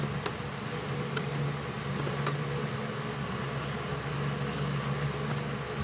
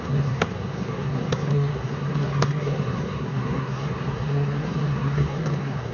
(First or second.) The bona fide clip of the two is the first